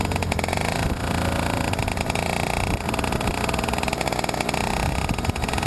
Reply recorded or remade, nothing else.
recorded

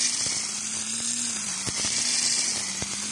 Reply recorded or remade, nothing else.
remade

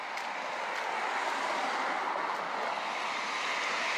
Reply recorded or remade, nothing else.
recorded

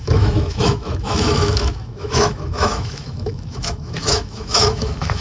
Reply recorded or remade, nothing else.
remade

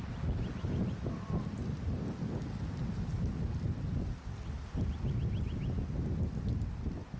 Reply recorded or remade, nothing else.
recorded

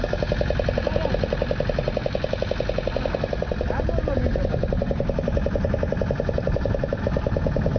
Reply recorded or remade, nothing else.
recorded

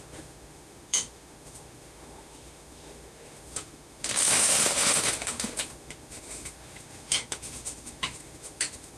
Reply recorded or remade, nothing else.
remade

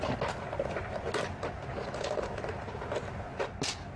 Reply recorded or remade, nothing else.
recorded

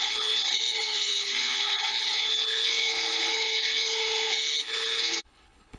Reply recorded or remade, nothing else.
remade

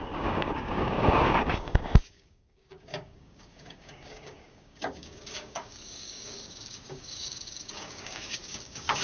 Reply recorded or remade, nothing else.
remade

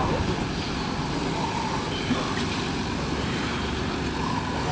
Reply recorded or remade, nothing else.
recorded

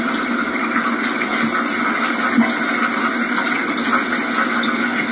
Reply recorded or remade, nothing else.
recorded